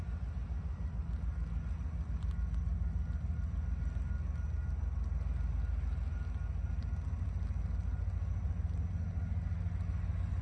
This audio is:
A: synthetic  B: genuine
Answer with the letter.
B